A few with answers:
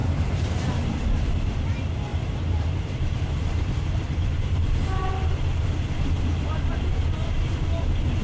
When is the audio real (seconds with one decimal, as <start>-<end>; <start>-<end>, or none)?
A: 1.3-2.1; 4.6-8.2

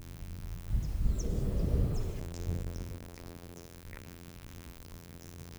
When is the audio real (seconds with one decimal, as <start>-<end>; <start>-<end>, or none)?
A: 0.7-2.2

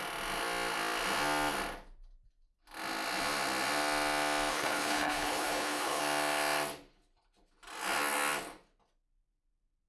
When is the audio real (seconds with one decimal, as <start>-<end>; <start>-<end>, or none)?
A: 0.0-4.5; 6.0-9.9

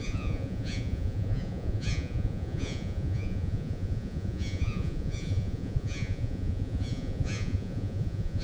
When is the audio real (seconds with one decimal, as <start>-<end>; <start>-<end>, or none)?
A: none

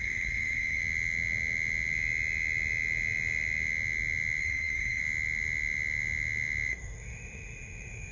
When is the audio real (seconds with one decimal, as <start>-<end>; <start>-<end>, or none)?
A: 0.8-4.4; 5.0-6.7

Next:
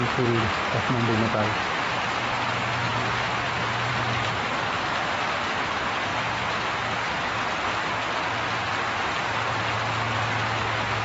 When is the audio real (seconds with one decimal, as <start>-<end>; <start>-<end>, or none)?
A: 0.0-2.9; 4.6-11.0

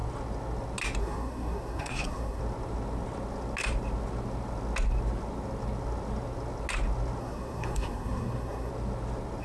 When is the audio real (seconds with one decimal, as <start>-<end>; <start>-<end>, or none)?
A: 0.0-1.0; 2.4-7.2; 8.7-9.4